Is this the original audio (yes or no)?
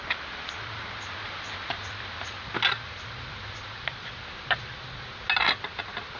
yes